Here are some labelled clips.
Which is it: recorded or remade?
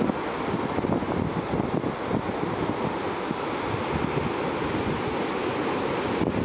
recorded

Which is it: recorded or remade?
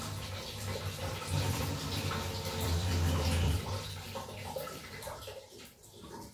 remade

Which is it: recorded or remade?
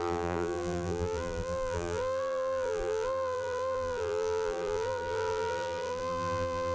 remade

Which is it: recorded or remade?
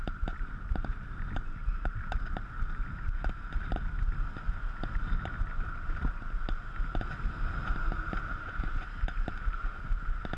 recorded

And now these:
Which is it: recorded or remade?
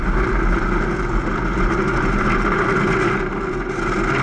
recorded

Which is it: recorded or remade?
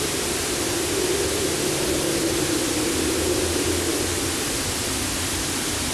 recorded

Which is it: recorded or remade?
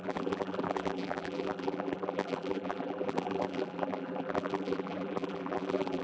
remade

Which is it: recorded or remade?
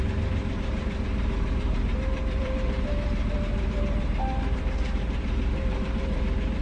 remade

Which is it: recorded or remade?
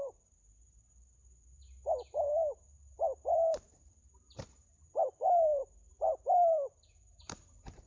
remade